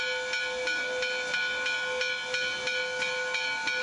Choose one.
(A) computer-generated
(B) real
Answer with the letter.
B